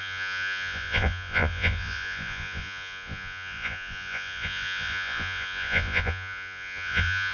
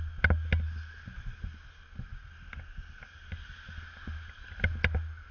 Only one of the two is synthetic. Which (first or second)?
first